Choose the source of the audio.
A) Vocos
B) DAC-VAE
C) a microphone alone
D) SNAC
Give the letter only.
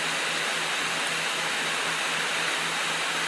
C